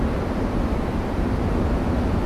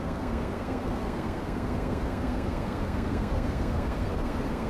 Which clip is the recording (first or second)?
first